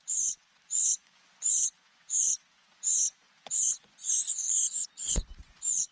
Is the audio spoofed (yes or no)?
yes